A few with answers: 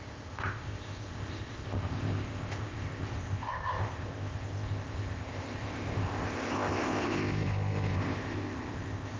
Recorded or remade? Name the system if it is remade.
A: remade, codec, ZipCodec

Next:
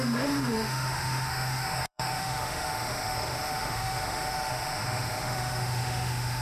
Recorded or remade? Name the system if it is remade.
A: remade, autoencoder, DAC-VAE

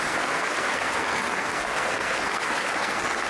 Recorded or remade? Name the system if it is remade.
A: remade, codec, SNAC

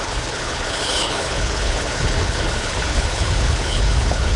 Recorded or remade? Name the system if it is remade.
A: remade, codec, HILCodec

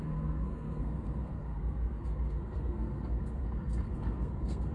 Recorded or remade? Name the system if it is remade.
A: remade, codec, SNAC